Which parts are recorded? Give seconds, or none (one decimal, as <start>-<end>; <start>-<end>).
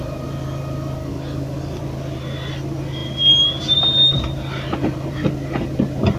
0.0-1.0; 1.8-6.2